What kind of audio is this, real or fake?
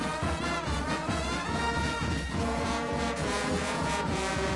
fake